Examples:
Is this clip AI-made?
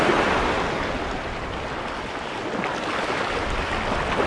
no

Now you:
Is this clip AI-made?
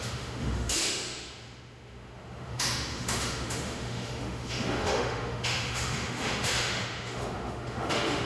yes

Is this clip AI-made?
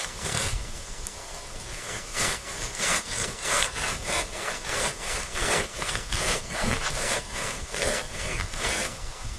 yes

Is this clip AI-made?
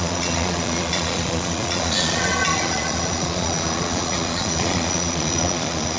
yes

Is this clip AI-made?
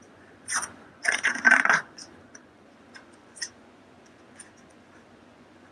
yes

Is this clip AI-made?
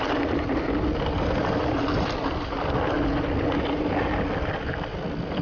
no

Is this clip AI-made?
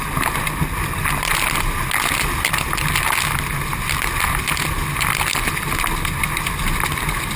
no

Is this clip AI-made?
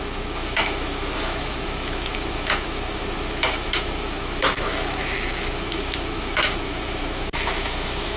yes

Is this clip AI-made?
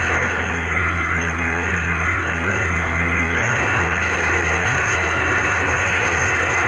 yes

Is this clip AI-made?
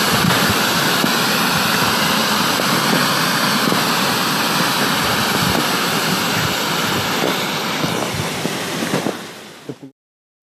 yes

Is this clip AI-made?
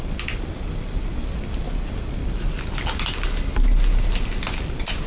no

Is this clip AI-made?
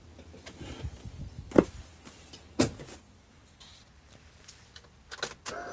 no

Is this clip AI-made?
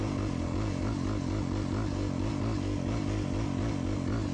no